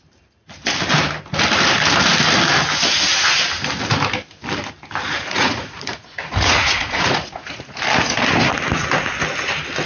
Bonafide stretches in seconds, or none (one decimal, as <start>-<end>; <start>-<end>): 0.0-5.1; 7.8-9.9